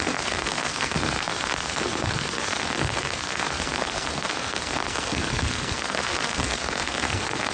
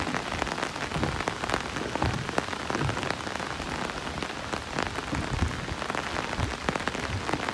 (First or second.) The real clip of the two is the second